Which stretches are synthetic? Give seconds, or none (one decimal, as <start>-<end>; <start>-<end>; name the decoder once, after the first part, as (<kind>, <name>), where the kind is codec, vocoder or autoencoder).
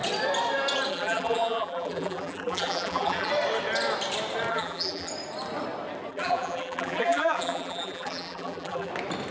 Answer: 0.9-3.3 (vocoder, BigVGAN v2); 4.5-5.1; 6.1-8.9